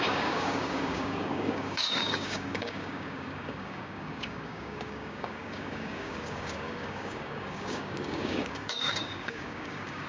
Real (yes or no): no